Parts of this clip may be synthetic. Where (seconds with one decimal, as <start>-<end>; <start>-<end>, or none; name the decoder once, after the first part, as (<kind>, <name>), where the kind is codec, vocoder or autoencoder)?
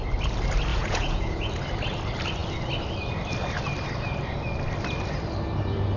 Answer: 0.7-1.5 (vocoder, Vocos)